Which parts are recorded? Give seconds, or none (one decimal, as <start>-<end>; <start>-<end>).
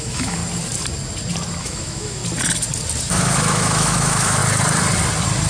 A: 0.4-1.6; 2.2-3.1; 4.4-5.5